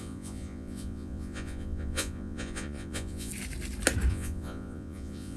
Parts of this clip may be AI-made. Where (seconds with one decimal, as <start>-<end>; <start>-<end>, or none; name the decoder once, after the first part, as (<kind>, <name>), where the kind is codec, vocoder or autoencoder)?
0.0-3.3 (vocoder, Vocos); 4.1-5.4